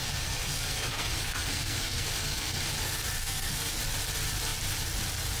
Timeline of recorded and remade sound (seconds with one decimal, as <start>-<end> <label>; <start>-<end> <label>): 0.0-2.6 remade; 2.6-3.2 recorded; 3.2-3.8 remade; 3.8-5.4 recorded